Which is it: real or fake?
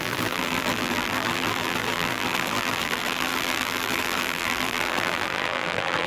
fake